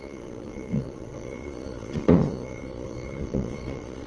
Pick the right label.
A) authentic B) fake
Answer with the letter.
B